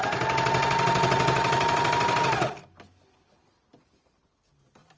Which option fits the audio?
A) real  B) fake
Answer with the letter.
A